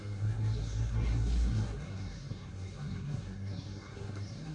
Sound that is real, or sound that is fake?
fake